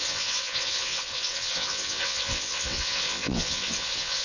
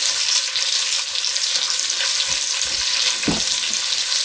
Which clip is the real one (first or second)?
second